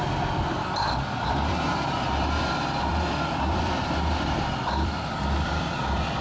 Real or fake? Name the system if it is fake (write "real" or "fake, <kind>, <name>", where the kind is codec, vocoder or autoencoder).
fake, vocoder, BigVGAN v2